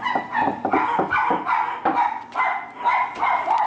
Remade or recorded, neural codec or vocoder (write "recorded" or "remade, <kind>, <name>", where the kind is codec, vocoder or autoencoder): recorded